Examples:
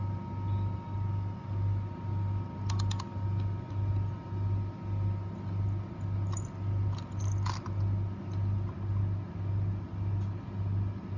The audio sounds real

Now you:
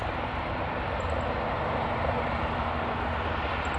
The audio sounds real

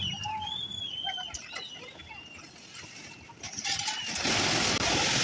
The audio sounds real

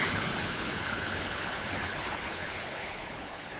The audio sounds fake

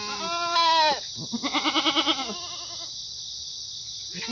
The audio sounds real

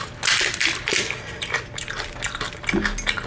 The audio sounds real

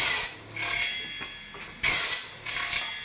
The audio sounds real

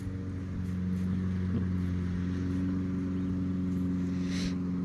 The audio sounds real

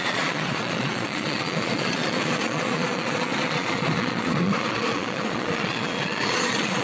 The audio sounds fake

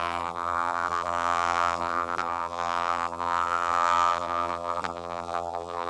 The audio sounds fake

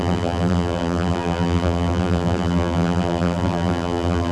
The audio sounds fake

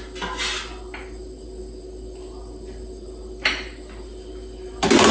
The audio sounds real